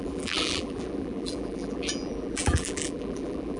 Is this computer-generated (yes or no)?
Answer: yes